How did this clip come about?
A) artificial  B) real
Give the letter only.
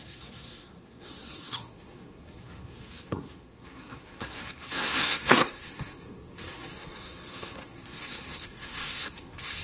A